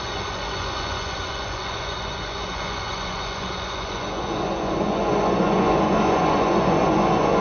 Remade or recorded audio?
remade